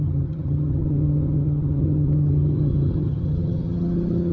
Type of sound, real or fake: fake